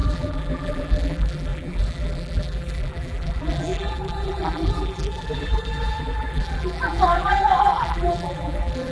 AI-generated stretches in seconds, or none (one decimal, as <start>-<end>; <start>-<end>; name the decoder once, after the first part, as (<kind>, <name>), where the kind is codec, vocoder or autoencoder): 0.0-8.9 (vocoder, BigVGAN v2)